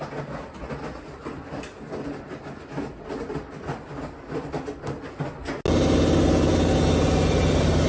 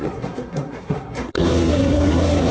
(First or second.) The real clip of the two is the first